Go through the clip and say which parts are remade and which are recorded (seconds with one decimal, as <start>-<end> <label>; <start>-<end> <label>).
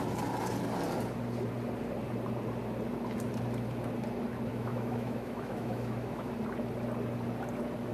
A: 0.0-4.5 recorded; 4.5-6.3 remade; 6.3-7.9 recorded